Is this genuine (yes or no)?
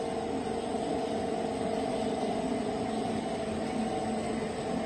yes